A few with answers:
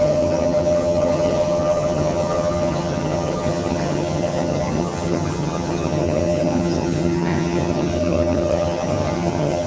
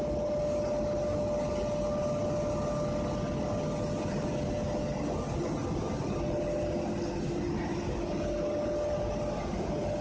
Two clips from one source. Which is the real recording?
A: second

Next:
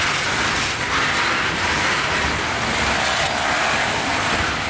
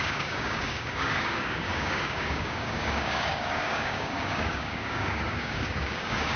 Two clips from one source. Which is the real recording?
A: first